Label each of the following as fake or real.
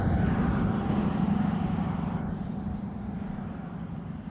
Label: real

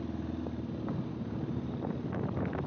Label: real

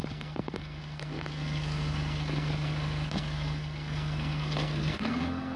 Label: fake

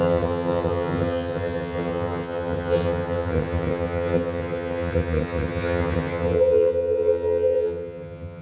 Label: fake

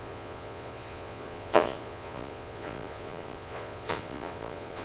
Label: fake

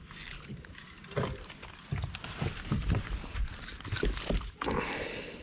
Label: real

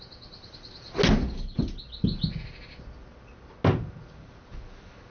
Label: real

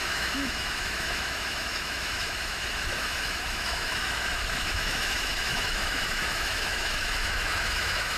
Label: fake